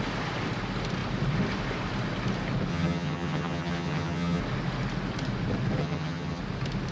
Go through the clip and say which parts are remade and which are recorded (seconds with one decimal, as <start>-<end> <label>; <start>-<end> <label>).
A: 0.0-2.7 recorded; 2.7-4.4 remade; 4.4-5.8 recorded; 5.8-6.4 remade; 6.4-6.9 recorded